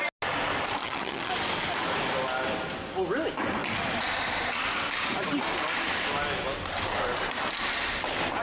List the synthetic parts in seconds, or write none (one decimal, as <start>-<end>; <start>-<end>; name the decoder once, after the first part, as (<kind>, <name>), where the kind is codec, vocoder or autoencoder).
0.8-1.3 (vocoder, HiFi-GAN)